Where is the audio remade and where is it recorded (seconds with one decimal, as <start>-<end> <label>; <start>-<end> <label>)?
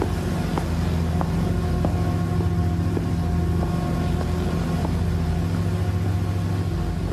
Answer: 0.0-7.1 recorded